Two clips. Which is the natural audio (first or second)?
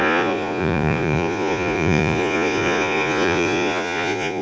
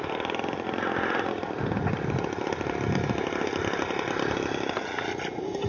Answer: second